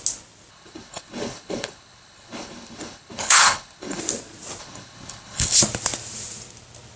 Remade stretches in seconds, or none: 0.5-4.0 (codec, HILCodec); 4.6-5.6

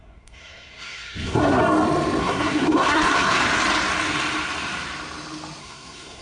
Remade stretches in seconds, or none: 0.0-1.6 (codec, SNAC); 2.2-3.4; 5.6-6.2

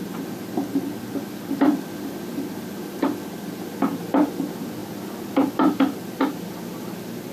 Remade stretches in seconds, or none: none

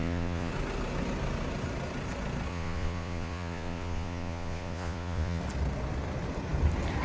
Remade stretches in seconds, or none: 0.0-0.5 (vocoder, Vocos); 2.5-5.4

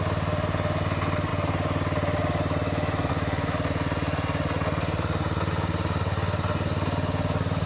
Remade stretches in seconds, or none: none